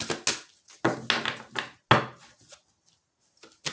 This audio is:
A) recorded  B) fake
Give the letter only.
A